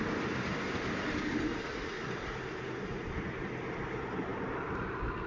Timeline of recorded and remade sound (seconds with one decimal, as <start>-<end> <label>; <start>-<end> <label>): 0.0-5.3 recorded